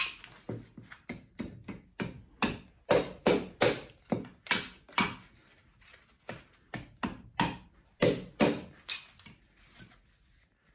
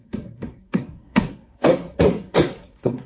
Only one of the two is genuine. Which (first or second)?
first